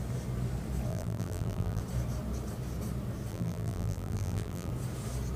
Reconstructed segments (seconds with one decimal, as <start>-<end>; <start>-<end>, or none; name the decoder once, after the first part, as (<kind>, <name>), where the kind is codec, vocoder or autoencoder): 0.9-1.8 (vocoder, BigVGAN v2); 3.3-4.7